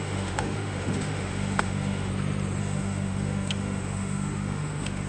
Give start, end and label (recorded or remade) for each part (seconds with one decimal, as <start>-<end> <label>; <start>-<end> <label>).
0.0-2.1 remade; 2.1-2.6 recorded; 2.6-5.1 remade